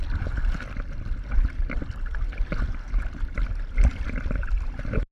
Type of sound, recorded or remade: recorded